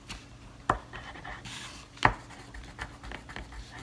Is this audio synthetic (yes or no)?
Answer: no